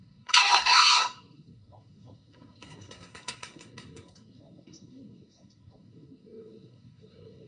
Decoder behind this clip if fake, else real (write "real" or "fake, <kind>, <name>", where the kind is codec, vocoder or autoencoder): fake, codec, SNAC